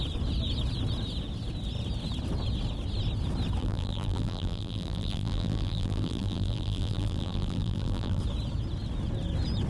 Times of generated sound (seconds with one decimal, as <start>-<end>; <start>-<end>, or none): 3.6-8.2